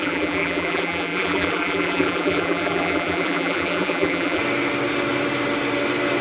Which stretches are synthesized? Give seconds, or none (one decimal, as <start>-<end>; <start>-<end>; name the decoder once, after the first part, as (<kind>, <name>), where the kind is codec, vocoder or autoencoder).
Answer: 0.0-4.4 (vocoder, BigVGAN v2)